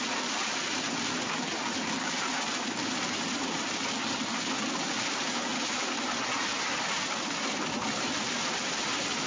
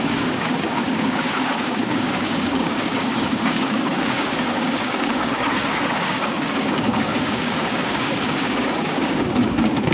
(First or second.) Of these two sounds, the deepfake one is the second